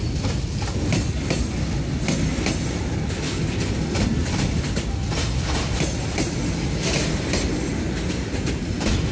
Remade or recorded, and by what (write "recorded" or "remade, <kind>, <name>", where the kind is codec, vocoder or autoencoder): recorded